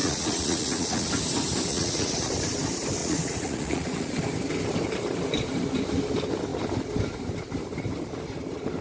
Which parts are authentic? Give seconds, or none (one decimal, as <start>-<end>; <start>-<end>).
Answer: 1.1-1.7; 2.3-3.0; 4.2-8.8